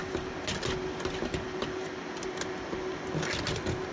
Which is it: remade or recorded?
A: recorded